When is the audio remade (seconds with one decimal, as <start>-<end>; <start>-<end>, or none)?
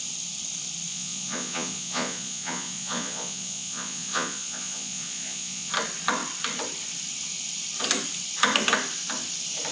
0.9-5.7